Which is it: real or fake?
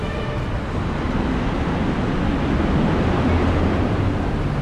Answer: real